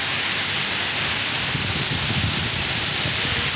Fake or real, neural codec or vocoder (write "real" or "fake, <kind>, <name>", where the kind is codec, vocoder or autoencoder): real